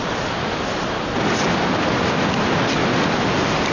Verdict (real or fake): real